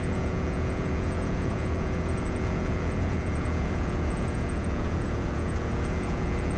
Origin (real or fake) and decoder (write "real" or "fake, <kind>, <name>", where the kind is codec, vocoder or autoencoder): fake, vocoder, Vocos